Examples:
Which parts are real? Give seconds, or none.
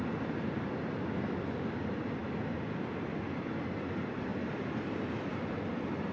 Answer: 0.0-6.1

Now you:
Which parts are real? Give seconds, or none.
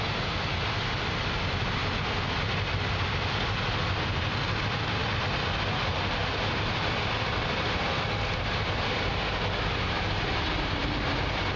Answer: 0.0-11.6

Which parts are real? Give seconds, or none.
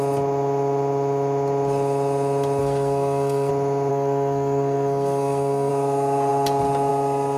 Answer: 0.0-2.6; 3.5-3.9; 5.7-7.4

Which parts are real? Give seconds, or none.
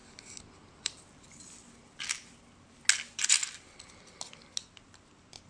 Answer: 0.0-5.5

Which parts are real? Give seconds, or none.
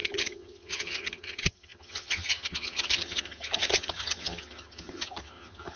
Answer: none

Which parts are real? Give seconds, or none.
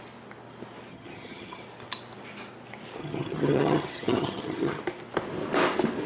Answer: 0.0-0.9; 1.6-3.0; 4.8-6.1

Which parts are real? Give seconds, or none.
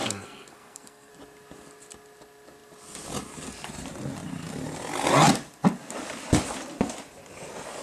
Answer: 1.1-7.8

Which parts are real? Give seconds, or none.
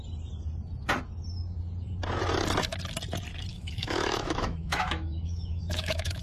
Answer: 0.0-3.5